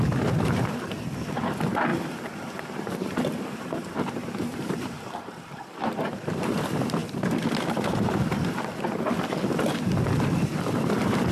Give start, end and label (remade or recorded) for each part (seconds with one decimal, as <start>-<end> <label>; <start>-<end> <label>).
0.0-1.9 recorded; 1.9-6.6 remade; 6.6-11.3 recorded